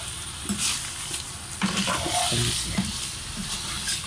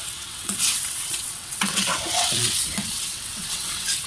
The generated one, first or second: second